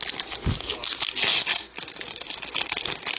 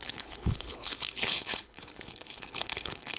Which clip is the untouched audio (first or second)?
first